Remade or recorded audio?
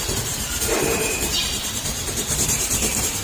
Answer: remade